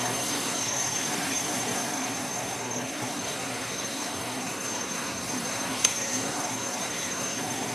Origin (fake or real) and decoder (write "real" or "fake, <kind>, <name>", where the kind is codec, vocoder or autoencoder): fake, codec, SNAC